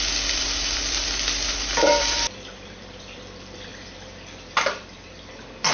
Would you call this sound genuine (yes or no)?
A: no